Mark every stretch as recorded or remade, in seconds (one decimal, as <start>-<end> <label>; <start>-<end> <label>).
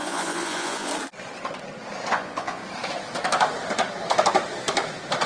0.0-0.9 remade; 0.9-2.1 recorded; 2.1-2.6 remade; 2.6-5.3 recorded